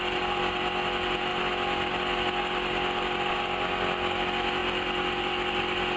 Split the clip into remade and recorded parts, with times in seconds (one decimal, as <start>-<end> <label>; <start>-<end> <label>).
0.0-6.0 recorded